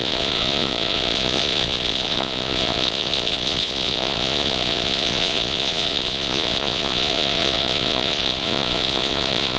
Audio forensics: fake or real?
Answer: fake